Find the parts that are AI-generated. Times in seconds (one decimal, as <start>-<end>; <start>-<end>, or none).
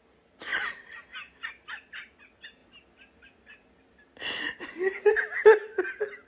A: 0.0-0.5; 2.2-2.6; 5.1-6.3